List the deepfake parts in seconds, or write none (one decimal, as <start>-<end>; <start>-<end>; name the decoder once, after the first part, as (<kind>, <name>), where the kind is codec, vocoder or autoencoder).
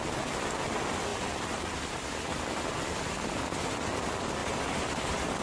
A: 1.1-2.4 (vocoder, BigVGAN v2); 4.4-5.4